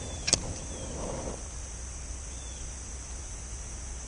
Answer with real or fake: real